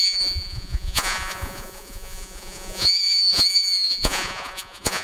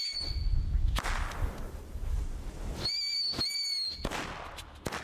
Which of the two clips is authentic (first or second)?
second